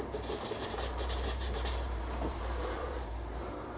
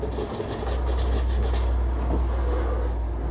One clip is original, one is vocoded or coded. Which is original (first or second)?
second